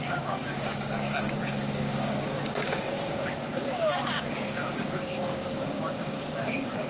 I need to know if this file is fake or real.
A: fake